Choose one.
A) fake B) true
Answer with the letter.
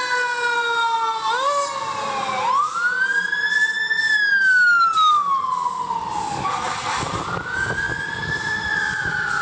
B